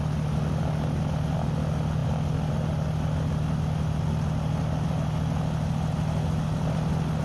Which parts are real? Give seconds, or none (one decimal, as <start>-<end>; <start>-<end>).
0.0-7.2